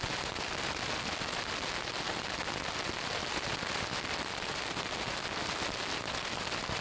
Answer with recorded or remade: recorded